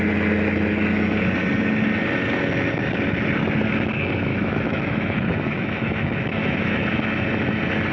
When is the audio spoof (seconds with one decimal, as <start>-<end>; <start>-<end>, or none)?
4.3-6.8